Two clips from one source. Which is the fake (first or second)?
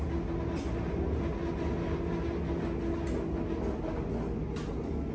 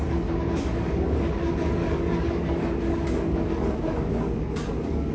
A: second